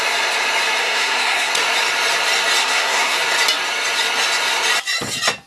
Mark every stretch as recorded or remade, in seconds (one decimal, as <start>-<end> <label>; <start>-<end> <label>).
0.0-0.8 recorded; 0.8-1.5 remade; 1.5-2.6 recorded; 2.6-3.2 remade; 3.2-5.5 recorded